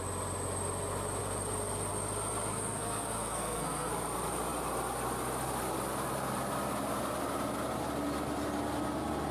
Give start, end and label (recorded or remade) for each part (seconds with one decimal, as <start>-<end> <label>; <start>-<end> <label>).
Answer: 0.0-2.5 recorded; 2.5-3.9 remade; 3.9-9.3 recorded